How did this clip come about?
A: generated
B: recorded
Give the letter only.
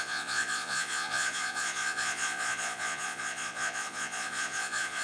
A